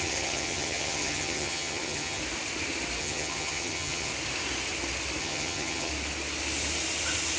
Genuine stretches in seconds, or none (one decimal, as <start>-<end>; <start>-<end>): 2.2-3.0; 4.1-5.2; 5.9-7.4